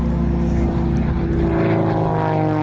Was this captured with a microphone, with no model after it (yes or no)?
yes